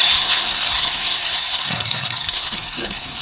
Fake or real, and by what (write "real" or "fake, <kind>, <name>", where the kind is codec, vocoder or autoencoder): fake, codec, SNAC